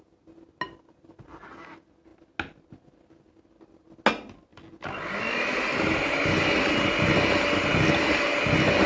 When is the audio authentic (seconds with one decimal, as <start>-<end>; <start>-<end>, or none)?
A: 0.0-8.9